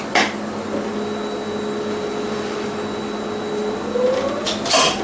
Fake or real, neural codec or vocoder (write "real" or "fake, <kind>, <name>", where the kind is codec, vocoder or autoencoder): fake, vocoder, BigVGAN v2